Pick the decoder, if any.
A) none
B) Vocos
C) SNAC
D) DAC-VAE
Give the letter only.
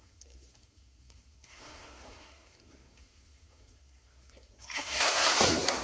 C